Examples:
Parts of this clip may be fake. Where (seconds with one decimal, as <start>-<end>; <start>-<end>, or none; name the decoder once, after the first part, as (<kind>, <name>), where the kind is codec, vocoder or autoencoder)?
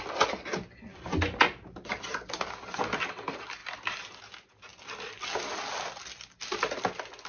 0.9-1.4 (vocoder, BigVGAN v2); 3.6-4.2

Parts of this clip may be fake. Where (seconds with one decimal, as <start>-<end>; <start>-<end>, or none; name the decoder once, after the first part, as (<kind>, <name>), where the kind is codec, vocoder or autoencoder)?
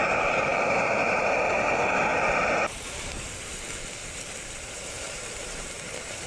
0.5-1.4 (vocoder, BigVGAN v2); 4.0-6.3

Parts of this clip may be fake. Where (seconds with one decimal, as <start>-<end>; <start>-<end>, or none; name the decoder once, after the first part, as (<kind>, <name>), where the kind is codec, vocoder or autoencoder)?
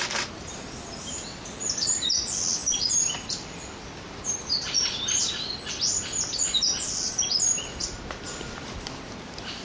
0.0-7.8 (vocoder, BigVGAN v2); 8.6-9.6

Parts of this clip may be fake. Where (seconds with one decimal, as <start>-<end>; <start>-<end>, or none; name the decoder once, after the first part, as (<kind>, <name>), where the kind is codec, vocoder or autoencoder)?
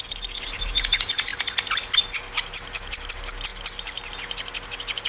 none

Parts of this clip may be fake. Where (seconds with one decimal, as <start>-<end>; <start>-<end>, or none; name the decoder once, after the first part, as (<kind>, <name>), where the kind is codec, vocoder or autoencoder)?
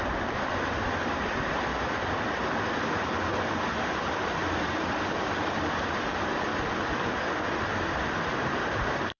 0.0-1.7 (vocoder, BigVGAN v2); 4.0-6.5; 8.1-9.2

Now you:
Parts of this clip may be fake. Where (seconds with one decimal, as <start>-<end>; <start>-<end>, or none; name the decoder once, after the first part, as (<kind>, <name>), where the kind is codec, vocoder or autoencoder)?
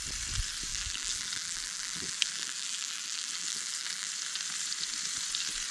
0.7-4.1 (vocoder, BigVGAN v2)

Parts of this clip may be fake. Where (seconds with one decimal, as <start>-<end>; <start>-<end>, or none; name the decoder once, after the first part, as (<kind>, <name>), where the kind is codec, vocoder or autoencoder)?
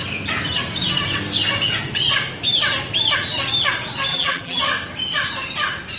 4.1-4.6 (vocoder, BigVGAN v2)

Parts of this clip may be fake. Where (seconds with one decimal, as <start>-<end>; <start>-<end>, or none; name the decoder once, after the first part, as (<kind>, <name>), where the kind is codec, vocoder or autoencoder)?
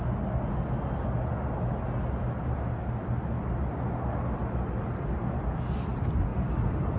3.0-3.8 (vocoder, BigVGAN v2); 4.4-5.1; 6.3-7.0